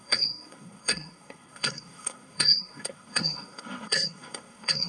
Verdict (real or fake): fake